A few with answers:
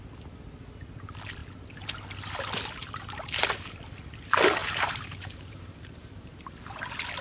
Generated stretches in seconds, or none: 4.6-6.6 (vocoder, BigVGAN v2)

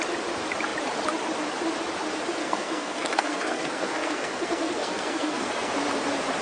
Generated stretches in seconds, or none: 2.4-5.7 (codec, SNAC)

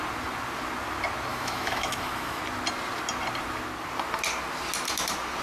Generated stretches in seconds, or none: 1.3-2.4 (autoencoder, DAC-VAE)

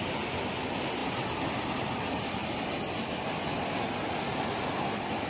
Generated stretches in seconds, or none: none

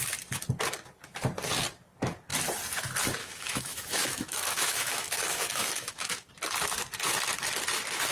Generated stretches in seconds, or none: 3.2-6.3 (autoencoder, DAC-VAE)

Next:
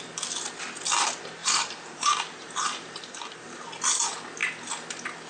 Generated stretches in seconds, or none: 1.4-3.6 (vocoder, BigVGAN v2)

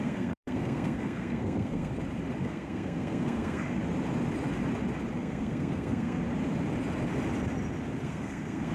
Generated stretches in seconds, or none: 0.0-1.9 (codec, SNAC); 2.4-3.8; 5.1-6.2; 8.0-8.7